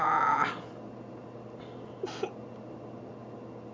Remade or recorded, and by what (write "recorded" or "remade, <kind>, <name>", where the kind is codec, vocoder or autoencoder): recorded